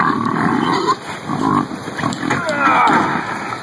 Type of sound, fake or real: real